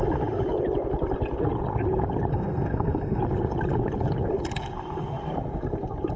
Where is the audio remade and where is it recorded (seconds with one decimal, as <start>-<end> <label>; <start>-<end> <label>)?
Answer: 0.0-2.3 recorded; 2.3-3.2 remade; 3.2-6.2 recorded

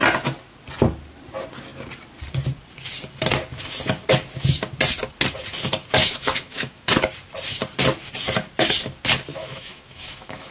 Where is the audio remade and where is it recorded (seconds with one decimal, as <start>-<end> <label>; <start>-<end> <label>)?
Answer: 0.0-6.0 recorded; 6.0-6.9 remade; 6.9-9.3 recorded; 9.3-10.5 remade

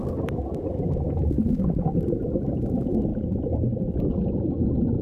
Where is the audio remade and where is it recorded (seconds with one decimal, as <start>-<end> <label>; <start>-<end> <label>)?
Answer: 0.0-5.0 recorded

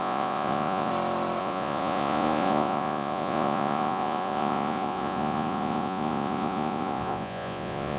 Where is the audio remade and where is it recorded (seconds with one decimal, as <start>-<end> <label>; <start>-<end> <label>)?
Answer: 0.0-0.9 remade; 0.9-1.4 recorded; 1.4-8.0 remade

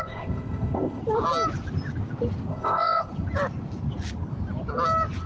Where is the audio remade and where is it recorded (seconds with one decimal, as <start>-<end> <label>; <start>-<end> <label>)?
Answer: 0.0-1.0 remade; 1.0-2.5 recorded; 2.5-3.1 remade; 3.1-5.3 recorded